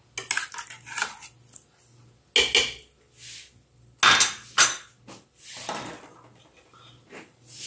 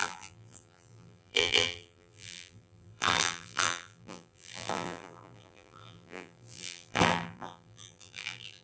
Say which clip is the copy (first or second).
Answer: second